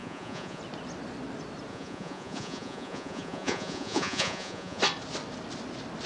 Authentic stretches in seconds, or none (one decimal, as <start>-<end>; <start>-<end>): 0.6-1.7; 4.8-6.1